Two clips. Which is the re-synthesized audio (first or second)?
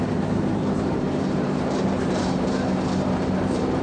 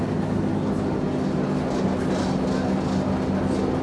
first